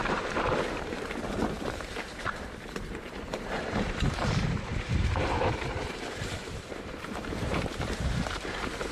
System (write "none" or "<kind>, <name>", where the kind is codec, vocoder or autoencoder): vocoder, BigVGAN v2